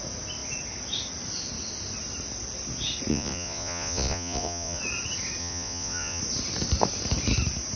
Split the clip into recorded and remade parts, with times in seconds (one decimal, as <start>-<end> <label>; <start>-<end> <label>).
0.0-3.1 recorded; 3.1-4.8 remade; 4.8-5.4 recorded; 5.4-6.2 remade; 6.2-7.8 recorded